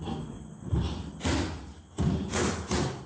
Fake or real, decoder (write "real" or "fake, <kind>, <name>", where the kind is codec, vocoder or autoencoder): fake, vocoder, BigVGAN v2